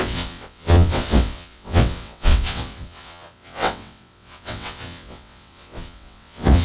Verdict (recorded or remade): remade